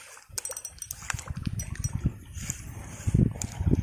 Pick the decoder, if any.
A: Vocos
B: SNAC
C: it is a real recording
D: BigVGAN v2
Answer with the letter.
C